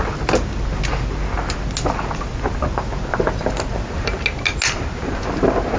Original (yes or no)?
yes